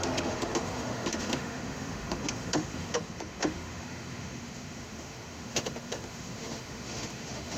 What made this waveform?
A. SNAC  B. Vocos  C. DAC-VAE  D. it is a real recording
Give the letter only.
C